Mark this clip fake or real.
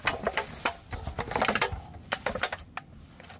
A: real